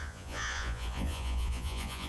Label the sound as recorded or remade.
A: remade